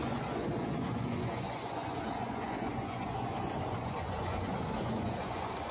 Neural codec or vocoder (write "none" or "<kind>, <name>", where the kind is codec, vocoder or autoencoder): vocoder, Vocos